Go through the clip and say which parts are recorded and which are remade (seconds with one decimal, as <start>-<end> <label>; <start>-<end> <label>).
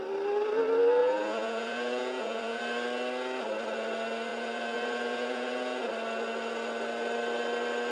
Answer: 0.0-1.0 recorded; 1.0-2.6 remade; 2.6-4.3 recorded; 4.3-5.9 remade; 5.9-7.9 recorded